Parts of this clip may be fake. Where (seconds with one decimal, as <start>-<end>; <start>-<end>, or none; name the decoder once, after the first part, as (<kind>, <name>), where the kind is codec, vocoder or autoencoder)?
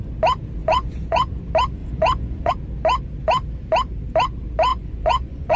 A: 0.6-1.4 (vocoder, Vocos); 1.8-2.5; 4.7-5.6